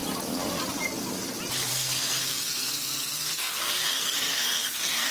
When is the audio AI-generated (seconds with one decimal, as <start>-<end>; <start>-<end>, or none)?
1.7-5.1